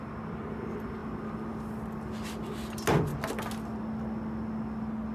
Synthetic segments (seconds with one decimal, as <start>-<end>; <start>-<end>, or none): none